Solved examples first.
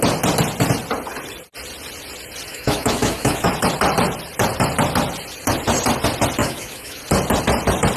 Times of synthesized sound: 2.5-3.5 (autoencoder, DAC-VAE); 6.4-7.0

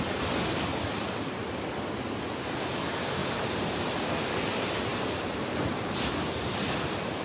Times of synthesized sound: 3.2-3.7 (vocoder, BigVGAN v2); 4.9-5.9

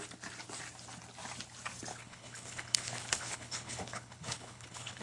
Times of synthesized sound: 1.9-5.0 (codec, HILCodec)

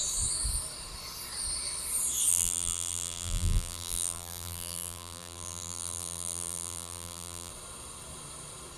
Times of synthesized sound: 2.3-7.5 (vocoder, BigVGAN v2)

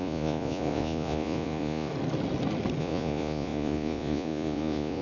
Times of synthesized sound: 0.0-1.9 (vocoder, Vocos); 2.8-5.0

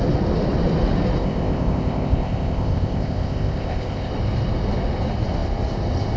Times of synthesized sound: 1.2-4.1 (codec, ZipCodec)